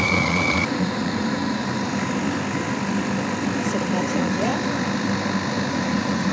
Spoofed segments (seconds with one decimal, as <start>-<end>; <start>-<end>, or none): 0.0-1.6; 4.0-4.5; 5.7-6.3